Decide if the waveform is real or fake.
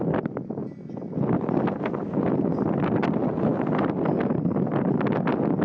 real